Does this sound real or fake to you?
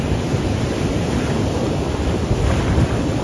real